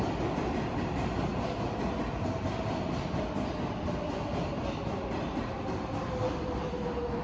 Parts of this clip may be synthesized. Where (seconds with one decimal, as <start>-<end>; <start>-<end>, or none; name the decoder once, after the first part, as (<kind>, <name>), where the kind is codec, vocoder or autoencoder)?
none